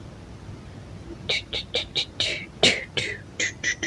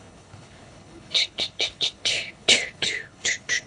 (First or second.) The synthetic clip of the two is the second